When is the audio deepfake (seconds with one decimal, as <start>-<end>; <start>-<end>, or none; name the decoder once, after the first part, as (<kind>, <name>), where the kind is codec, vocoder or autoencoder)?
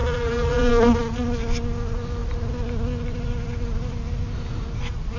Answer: 0.0-0.7 (vocoder, BigVGAN v2)